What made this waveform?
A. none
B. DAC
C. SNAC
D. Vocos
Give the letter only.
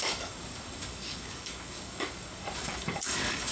B